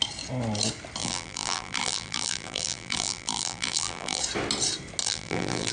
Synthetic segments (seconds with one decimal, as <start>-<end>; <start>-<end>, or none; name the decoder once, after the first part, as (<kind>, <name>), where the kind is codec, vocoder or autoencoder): 1.0-4.2 (vocoder, BigVGAN v2); 5.0-5.7